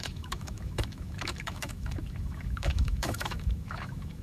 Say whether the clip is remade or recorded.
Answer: remade